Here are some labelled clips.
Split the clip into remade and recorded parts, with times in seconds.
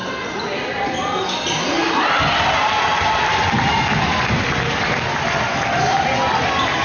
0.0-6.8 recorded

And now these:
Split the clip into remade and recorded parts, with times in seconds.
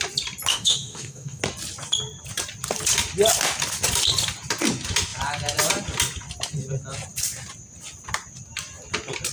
0.0-0.5 recorded; 0.5-1.4 remade; 1.4-9.3 recorded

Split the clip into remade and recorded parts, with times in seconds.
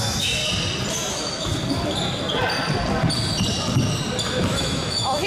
0.0-0.4 remade; 0.4-1.1 recorded; 1.1-1.5 remade; 1.5-4.5 recorded; 4.5-5.3 remade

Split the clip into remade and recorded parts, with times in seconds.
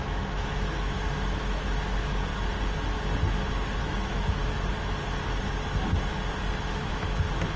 0.0-2.3 remade; 2.3-3.8 recorded; 3.8-4.4 remade; 4.4-6.8 recorded; 6.8-7.6 remade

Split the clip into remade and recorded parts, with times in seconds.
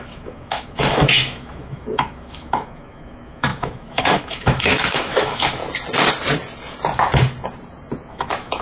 0.0-5.6 remade; 5.6-8.1 recorded; 8.1-8.6 remade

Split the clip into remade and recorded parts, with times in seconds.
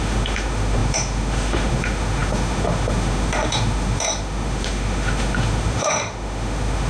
0.0-6.9 remade